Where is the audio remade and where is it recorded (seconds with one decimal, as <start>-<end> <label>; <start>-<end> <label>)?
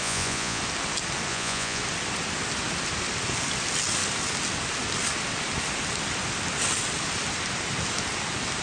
0.0-0.6 remade; 0.6-1.3 recorded; 1.3-1.8 remade; 1.8-8.6 recorded